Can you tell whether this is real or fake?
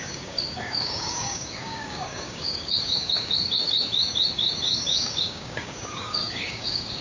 fake